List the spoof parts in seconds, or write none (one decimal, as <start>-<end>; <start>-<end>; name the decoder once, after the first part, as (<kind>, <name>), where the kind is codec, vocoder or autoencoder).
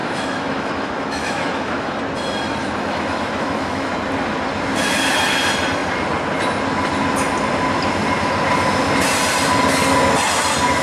0.0-2.0 (autoencoder, DAC-VAE); 2.6-3.9